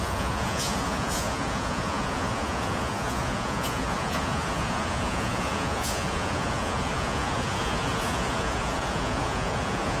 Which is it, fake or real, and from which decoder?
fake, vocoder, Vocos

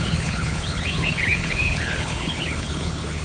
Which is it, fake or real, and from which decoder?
fake, codec, HILCodec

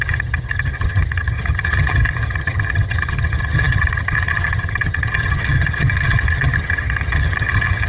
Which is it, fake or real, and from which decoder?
fake, vocoder, HiFi-GAN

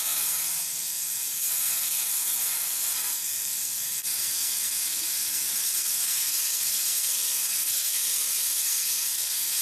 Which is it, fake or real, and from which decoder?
fake, codec, SNAC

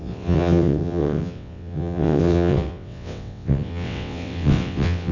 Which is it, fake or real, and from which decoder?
fake, vocoder, WaveNeXt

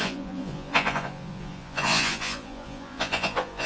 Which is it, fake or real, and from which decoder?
fake, vocoder, Vocos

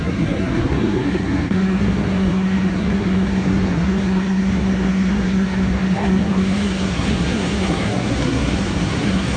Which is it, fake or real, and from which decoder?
fake, codec, SNAC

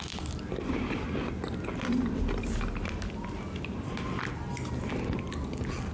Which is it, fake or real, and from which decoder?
real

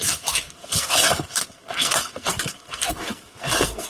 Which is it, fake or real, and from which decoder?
fake, codec, SNAC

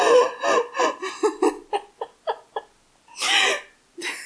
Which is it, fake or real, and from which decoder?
real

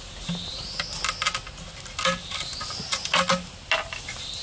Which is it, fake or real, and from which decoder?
real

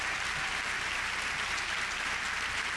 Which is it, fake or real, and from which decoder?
real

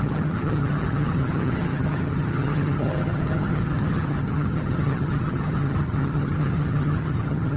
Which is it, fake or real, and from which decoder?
fake, vocoder, HiFi-GAN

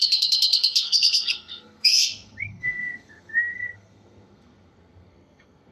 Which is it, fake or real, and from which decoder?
fake, codec, SNAC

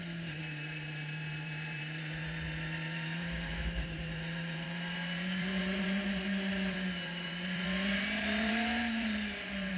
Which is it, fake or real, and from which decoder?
fake, vocoder, BigVGAN v2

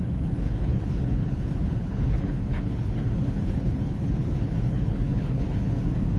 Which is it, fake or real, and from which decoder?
fake, codec, HILCodec